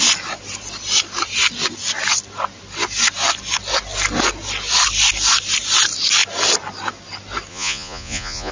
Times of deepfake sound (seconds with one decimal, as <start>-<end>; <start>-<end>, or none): 7.5-8.5